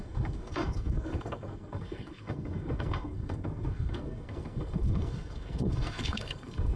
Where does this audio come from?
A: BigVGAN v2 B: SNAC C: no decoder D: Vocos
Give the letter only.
B